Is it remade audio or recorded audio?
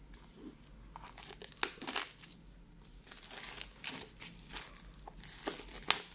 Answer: recorded